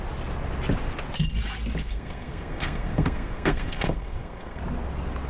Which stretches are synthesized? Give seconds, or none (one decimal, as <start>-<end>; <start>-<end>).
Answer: 1.8-4.6